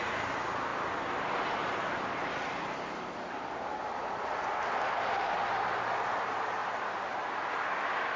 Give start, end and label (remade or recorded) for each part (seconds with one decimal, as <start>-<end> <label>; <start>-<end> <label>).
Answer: 0.0-8.2 recorded